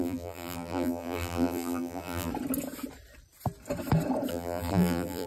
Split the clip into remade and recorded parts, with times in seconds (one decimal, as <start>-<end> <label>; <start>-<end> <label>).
0.0-2.3 remade; 2.3-4.3 recorded; 4.3-5.3 remade